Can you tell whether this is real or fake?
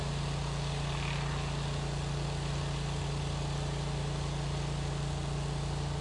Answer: real